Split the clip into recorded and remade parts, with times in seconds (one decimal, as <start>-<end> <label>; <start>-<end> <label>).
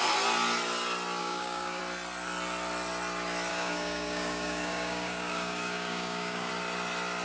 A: 0.0-1.2 recorded; 1.2-1.8 remade; 1.8-3.5 recorded; 3.5-6.5 remade; 6.5-7.2 recorded